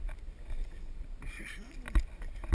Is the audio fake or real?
real